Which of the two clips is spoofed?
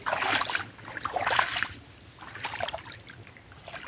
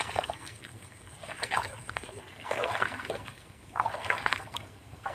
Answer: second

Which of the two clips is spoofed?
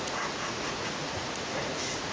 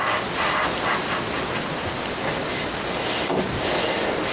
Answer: first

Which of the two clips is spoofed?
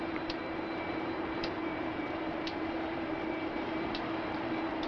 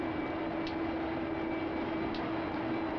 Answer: first